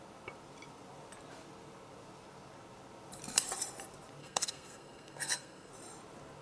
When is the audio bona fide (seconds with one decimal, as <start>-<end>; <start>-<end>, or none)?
0.0-4.2; 5.7-6.4